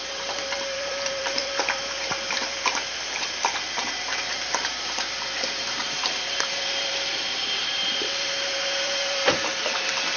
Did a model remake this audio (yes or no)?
yes